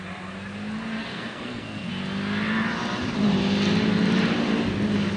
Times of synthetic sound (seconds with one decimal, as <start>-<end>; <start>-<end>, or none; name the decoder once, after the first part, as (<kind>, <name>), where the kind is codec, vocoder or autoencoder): 1.0-1.9 (codec, SNAC)